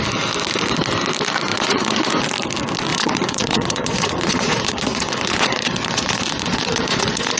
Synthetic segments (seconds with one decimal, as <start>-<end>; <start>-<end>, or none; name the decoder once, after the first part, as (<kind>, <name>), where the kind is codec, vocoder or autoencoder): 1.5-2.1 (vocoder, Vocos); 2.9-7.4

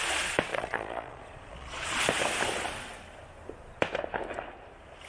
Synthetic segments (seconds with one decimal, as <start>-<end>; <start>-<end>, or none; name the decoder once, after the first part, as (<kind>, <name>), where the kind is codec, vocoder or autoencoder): 0.5-2.0 (vocoder, Vocos)

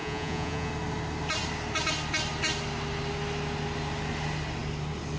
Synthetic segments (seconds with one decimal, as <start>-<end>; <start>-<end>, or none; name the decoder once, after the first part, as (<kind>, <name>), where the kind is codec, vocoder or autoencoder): 0.0-0.7 (vocoder, Vocos)